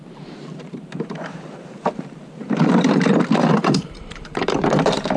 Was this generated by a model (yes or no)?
yes